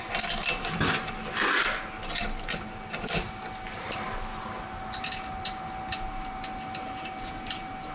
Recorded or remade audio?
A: recorded